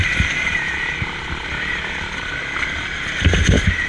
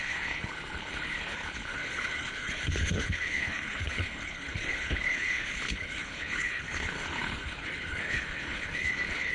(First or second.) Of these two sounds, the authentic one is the first